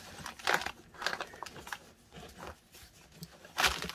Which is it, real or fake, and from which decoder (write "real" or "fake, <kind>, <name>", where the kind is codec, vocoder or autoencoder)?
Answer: real